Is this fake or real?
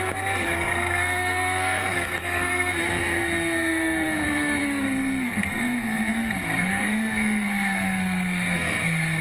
fake